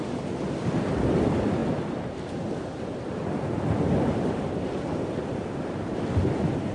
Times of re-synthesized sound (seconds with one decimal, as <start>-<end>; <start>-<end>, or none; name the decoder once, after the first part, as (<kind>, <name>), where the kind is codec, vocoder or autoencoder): 0.0-6.7 (vocoder, BigVGAN v2)

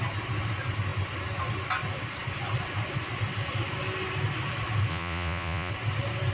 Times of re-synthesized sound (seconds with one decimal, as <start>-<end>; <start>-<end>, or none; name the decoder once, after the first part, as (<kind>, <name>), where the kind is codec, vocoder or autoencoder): 4.9-5.7 (vocoder, Vocos)